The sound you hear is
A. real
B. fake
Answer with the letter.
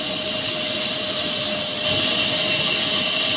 A